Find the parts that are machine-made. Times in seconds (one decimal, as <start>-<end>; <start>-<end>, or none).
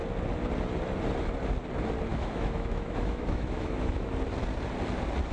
2.1-4.1